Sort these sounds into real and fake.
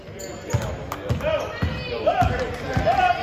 real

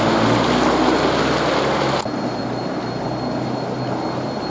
real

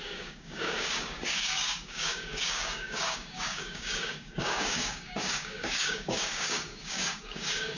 fake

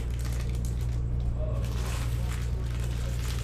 real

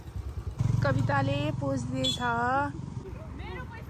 real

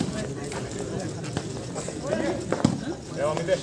real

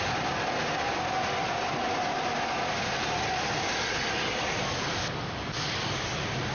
real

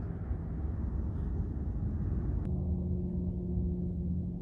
real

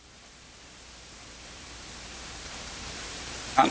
fake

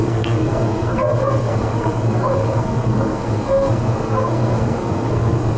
fake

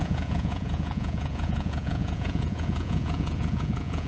fake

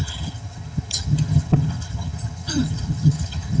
fake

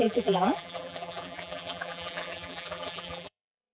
fake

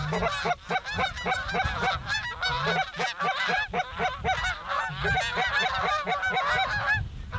real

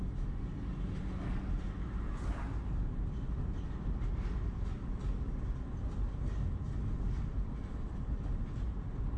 real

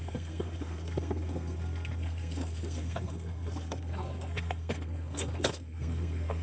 fake